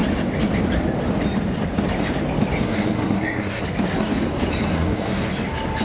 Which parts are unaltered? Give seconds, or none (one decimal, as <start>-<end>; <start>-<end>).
0.0-2.6; 3.6-4.7; 5.3-5.8